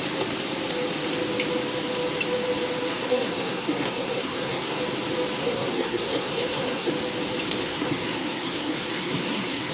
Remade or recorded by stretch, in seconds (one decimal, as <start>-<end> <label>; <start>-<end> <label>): 0.0-2.9 recorded; 2.9-4.8 remade; 4.8-5.4 recorded; 5.4-6.9 remade; 6.9-7.6 recorded; 7.6-9.7 remade